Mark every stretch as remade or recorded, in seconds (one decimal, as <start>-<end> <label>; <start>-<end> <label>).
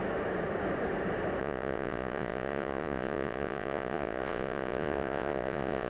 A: 0.0-1.4 recorded; 1.4-5.9 remade